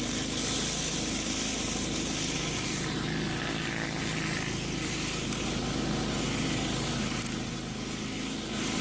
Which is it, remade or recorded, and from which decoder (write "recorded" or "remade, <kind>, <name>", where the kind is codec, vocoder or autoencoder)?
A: recorded